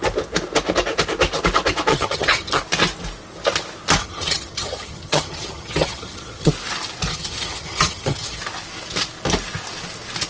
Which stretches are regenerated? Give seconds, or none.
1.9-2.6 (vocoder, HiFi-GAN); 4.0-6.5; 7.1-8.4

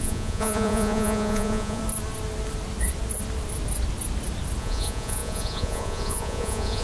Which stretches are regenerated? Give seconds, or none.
0.0-1.8 (vocoder, Vocos); 4.6-6.8

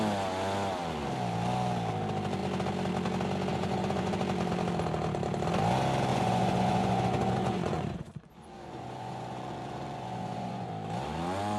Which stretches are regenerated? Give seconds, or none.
3.5-4.2 (vocoder, Vocos); 6.1-10.7